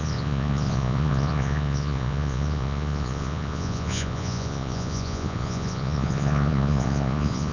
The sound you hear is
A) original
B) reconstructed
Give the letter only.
B